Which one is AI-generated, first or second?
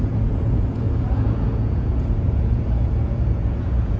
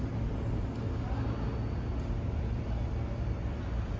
first